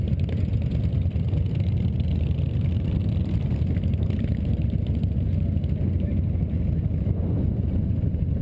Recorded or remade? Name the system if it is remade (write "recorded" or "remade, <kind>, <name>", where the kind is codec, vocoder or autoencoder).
recorded